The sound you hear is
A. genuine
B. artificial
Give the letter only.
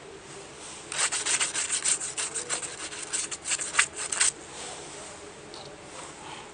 A